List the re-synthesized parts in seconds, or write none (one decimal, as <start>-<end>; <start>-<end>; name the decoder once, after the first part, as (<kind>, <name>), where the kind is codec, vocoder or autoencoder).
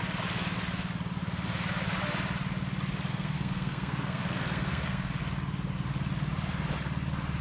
3.1-5.2 (codec, SNAC)